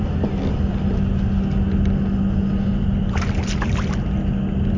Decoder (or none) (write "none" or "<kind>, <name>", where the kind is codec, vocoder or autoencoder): none